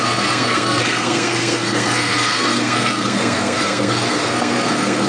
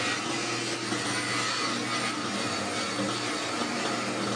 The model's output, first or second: first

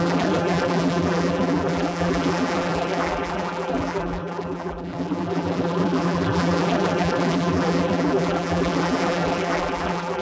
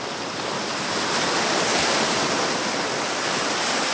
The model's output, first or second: first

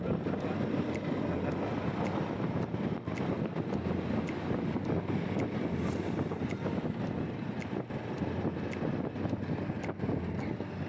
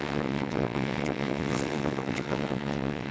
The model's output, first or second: second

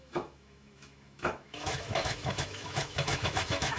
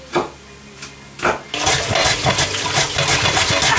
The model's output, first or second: first